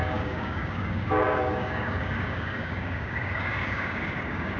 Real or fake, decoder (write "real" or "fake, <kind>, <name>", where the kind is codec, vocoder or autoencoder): fake, codec, DAC